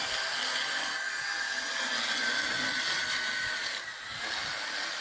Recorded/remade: recorded